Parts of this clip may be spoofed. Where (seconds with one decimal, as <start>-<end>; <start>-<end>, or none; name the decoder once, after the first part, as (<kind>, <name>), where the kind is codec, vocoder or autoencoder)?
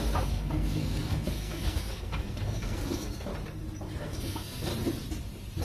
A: 0.0-3.3 (codec, SNAC); 4.0-4.7